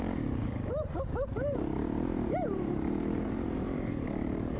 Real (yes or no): no